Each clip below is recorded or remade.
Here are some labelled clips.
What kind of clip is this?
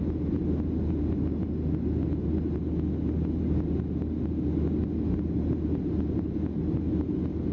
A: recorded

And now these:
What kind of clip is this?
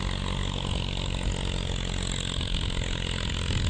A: recorded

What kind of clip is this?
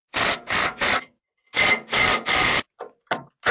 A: recorded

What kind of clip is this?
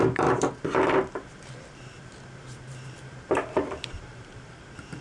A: remade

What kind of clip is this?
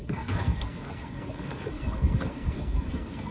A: remade